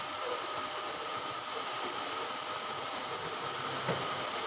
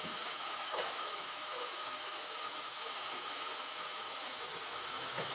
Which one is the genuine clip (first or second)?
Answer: first